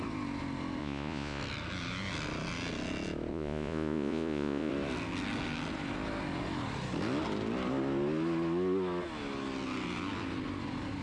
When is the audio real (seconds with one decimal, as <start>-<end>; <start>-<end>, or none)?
0.0-0.8; 1.4-3.3; 4.7-11.0